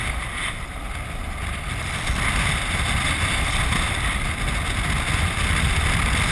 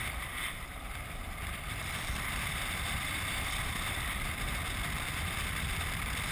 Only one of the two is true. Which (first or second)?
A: first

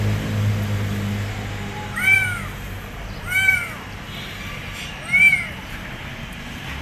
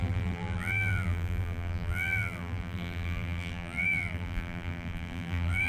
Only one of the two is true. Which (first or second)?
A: first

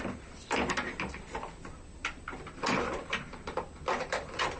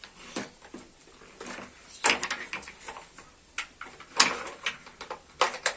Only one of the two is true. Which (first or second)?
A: second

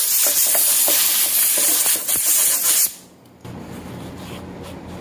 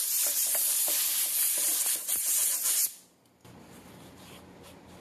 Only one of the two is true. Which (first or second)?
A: first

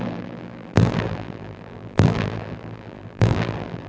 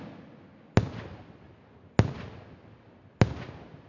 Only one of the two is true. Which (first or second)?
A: second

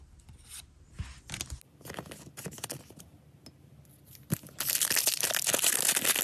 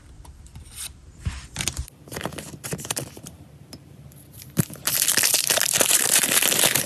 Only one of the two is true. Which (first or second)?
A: first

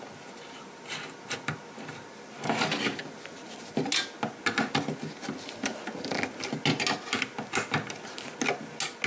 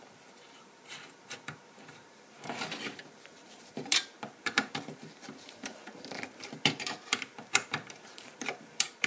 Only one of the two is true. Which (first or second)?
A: first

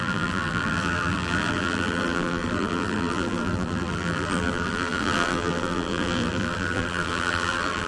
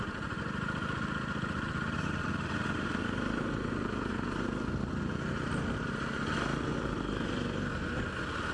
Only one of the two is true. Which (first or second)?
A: second